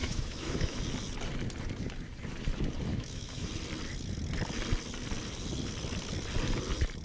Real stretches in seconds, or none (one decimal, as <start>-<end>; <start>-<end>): 0.8-2.9; 3.5-7.0